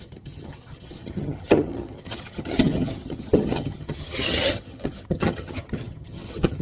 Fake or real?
fake